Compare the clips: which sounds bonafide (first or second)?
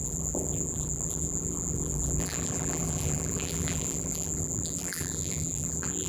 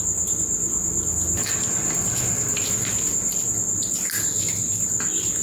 second